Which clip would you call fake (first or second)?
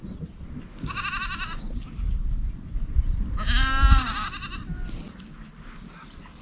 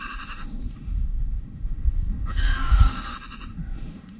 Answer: second